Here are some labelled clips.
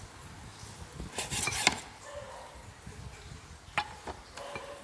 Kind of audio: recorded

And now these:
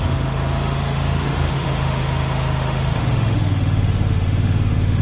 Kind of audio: remade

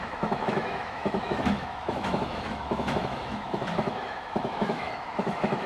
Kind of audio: remade